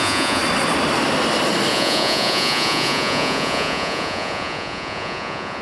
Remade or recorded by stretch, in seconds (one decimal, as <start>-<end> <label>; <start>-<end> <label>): 0.0-0.4 remade; 0.4-1.7 recorded; 1.7-5.6 remade